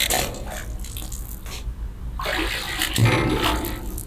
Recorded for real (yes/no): yes